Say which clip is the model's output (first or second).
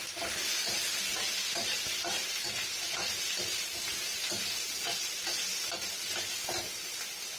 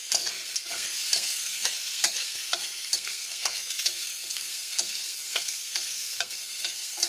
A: second